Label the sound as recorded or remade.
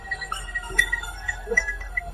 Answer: remade